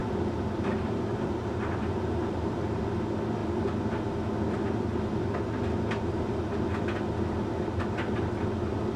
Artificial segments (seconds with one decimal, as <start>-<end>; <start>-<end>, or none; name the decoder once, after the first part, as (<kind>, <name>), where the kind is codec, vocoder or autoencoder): 0.0-2.8 (vocoder, BigVGAN v2)